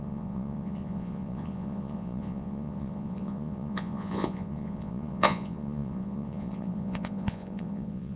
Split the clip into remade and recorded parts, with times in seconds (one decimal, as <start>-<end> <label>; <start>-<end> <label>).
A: 0.0-8.2 remade